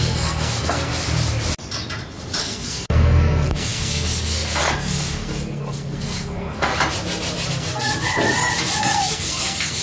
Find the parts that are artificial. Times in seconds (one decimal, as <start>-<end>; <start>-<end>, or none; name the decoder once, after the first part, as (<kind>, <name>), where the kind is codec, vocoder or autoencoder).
0.0-0.9 (codec, SNAC); 2.4-6.7; 7.5-7.9; 8.8-9.8